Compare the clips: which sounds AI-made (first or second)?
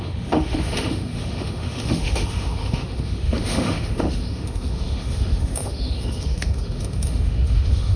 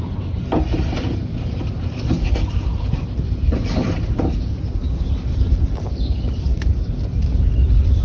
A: first